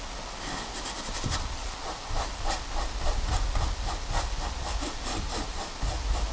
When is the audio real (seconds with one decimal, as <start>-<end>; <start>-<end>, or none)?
0.0-6.3